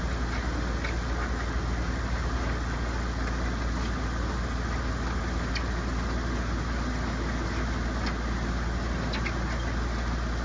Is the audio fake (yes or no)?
no